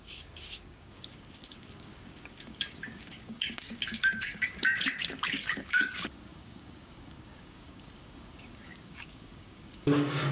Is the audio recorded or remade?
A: remade